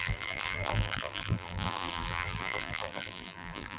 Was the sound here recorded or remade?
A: remade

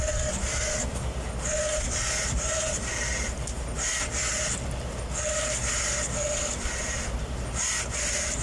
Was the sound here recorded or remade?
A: recorded